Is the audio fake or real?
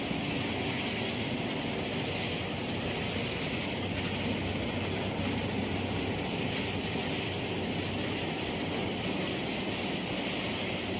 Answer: real